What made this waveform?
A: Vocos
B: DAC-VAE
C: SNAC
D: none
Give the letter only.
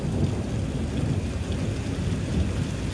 D